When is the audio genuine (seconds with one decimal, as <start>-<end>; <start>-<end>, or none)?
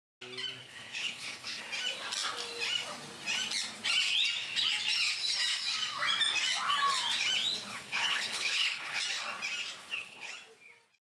0.0-0.6; 1.6-7.7; 9.0-9.8; 10.3-11.0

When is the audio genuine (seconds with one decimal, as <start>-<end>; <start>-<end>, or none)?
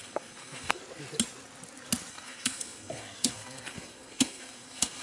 0.8-2.1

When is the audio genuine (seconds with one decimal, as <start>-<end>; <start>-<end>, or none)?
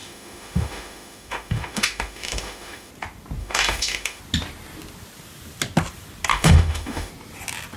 2.9-3.4; 4.2-6.3; 7.1-7.8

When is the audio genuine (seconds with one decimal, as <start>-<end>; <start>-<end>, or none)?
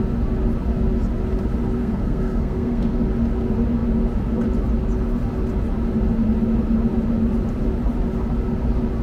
0.0-1.8; 3.0-9.0